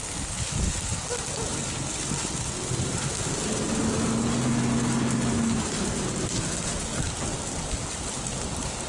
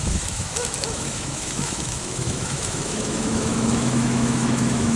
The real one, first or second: first